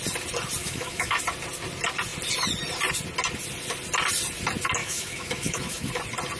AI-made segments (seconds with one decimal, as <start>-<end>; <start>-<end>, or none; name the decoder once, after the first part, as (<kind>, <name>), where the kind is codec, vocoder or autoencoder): 0.6-1.2 (autoencoder, DAC-VAE); 4.8-5.9